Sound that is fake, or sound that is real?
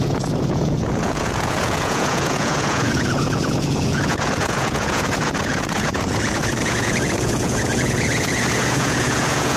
fake